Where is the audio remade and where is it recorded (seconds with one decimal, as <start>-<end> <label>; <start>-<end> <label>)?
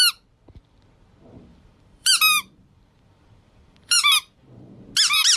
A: 0.0-1.5 recorded; 1.5-4.7 remade; 4.7-5.4 recorded